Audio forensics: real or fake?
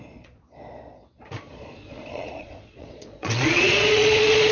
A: fake